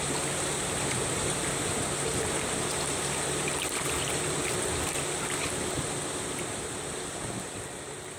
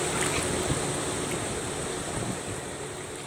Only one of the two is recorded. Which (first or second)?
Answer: second